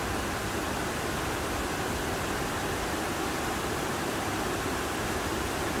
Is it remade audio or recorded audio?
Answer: recorded